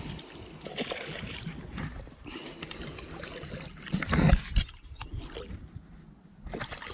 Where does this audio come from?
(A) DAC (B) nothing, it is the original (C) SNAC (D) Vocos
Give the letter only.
B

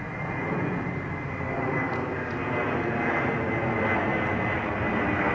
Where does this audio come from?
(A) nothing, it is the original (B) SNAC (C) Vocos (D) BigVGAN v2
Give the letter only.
A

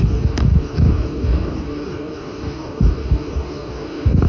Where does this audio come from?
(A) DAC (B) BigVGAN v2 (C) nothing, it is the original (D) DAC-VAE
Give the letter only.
A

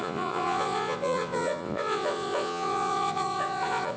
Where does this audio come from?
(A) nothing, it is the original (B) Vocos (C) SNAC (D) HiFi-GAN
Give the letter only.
B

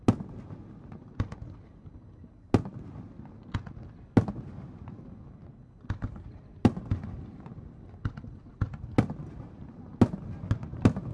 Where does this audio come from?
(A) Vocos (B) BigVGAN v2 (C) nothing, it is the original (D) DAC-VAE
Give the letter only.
C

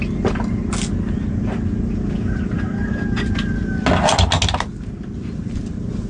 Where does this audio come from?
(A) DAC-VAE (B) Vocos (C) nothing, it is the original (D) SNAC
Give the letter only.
C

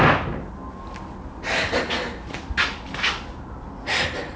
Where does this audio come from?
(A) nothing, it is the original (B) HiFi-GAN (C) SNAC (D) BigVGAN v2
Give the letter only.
A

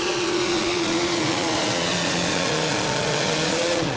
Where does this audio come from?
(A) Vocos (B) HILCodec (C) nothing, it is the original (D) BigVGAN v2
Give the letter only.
A